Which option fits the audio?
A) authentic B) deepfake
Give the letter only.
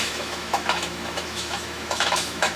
B